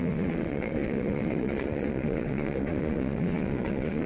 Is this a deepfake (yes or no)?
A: yes